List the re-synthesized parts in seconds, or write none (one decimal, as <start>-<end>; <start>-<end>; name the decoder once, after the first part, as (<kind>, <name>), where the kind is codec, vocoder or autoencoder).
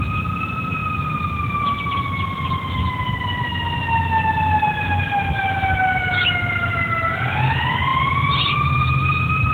0.8-2.0 (vocoder, BigVGAN v2); 7.9-9.5